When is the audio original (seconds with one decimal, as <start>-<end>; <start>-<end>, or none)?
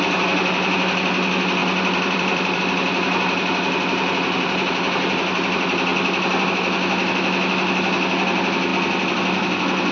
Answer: 0.0-1.6; 2.6-9.9